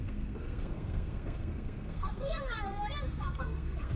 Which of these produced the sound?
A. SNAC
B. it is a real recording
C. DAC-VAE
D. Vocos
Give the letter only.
A